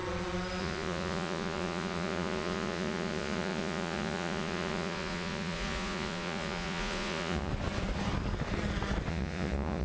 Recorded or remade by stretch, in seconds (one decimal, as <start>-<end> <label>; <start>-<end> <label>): 0.0-0.6 recorded; 0.6-7.5 remade; 7.5-9.1 recorded; 9.1-9.8 remade